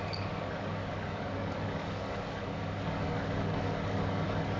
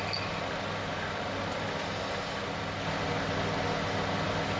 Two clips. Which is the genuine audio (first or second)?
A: second